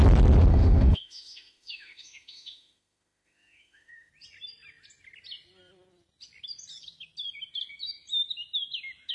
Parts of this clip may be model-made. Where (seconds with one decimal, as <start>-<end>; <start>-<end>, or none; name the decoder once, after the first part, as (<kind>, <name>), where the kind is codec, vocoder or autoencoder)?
0.5-4.1 (autoencoder, DAC-VAE)